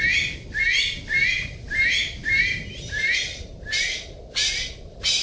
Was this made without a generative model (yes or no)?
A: yes